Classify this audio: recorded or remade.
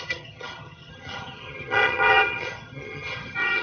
remade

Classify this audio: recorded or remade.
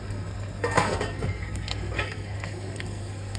remade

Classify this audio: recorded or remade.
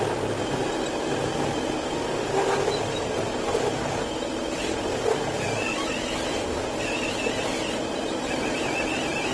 recorded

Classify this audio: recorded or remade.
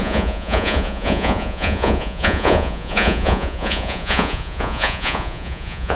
remade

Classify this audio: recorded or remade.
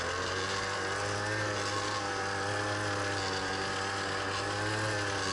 recorded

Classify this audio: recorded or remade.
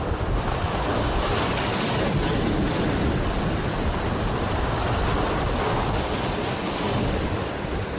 remade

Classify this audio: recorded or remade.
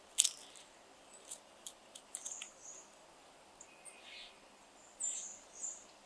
recorded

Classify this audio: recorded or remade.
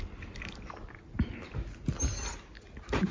recorded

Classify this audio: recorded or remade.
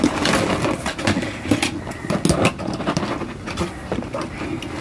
recorded